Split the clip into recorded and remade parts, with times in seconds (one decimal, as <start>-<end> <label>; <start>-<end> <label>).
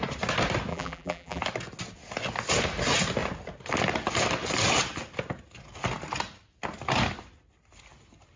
0.0-0.7 recorded; 0.7-1.4 remade; 1.4-8.4 recorded